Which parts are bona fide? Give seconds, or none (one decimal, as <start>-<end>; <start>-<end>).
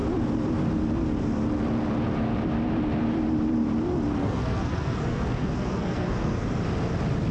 0.0-4.2; 6.5-7.3